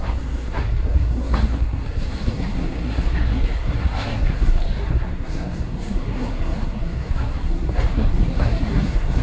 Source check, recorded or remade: remade